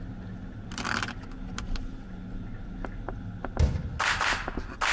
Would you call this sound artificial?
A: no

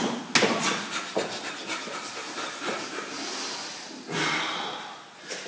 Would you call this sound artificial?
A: no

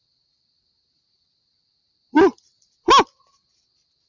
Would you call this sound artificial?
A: no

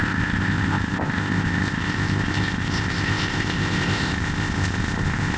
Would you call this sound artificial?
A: yes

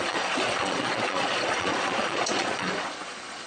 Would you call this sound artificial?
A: yes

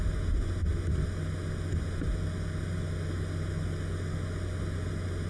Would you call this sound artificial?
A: no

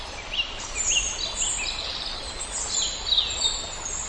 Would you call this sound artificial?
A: no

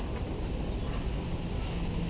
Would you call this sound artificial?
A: no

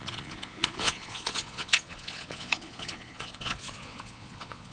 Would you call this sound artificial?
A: yes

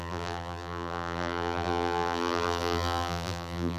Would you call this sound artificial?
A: yes